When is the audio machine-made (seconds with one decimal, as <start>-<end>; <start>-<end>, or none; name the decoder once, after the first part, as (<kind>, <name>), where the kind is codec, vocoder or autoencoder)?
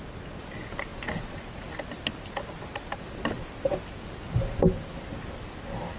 none